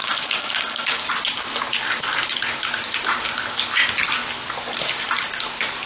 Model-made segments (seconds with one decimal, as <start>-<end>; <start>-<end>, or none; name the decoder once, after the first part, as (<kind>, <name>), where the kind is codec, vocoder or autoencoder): 0.0-1.1 (codec, DAC)